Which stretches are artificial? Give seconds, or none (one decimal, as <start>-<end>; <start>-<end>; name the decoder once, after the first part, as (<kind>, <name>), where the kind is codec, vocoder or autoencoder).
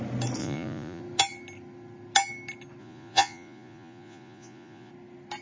0.4-1.0 (vocoder, Vocos); 2.8-4.9